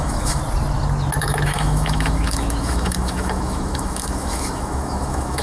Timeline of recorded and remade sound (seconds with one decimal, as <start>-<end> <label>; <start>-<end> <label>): 0.0-0.4 remade; 0.4-1.2 recorded; 1.2-5.4 remade